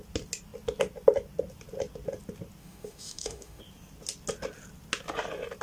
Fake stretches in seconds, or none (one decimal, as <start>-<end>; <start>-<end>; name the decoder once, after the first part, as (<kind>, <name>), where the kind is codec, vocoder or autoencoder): 2.6-3.6 (autoencoder, DAC-VAE)